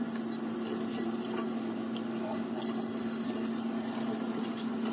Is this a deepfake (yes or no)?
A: no